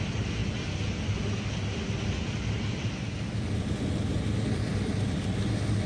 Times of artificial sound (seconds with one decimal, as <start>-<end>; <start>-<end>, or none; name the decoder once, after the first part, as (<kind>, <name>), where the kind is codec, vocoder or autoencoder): none